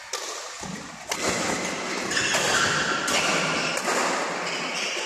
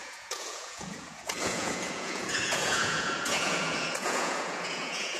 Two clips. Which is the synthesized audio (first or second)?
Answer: second